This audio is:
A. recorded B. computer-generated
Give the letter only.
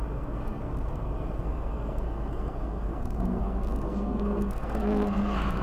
B